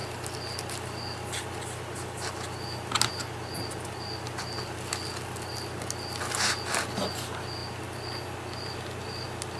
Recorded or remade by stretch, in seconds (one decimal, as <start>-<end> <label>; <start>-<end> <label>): 0.0-9.6 recorded